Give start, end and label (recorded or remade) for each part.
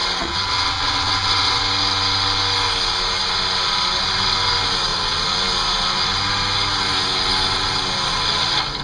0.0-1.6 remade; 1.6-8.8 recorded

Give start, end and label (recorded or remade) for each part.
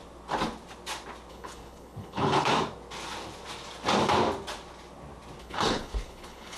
0.0-1.3 recorded; 1.3-2.5 remade; 2.5-5.4 recorded; 5.4-6.6 remade